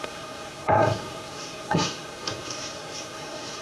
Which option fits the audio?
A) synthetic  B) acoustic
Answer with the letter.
A